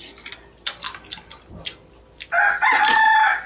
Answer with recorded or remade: recorded